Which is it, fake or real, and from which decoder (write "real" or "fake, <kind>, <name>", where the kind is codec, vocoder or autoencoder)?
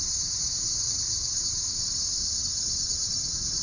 fake, vocoder, HiFi-GAN